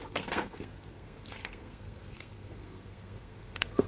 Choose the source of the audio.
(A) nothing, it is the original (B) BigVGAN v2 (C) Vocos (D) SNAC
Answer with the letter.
D